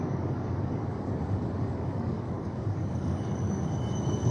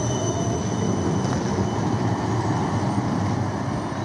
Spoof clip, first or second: first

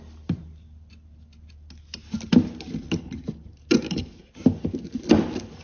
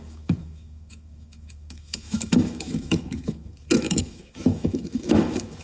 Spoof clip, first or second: second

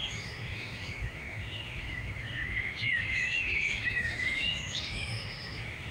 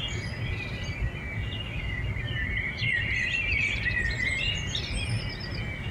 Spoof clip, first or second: first